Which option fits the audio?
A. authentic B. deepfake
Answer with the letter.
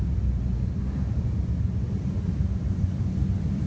A